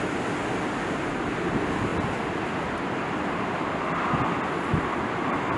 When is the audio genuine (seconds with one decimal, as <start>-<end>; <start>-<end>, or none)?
0.0-5.6